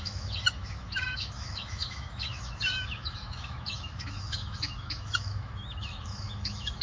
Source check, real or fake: fake